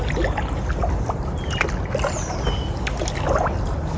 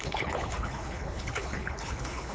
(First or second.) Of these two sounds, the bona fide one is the first